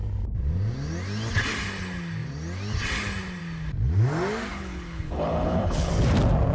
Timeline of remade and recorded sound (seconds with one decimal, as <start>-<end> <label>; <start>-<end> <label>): 0.0-4.5 recorded; 4.5-5.9 remade; 5.9-6.5 recorded